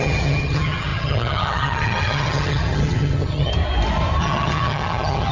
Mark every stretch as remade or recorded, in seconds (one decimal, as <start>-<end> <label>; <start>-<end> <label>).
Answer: 0.0-3.5 remade; 3.5-4.2 recorded; 4.2-5.3 remade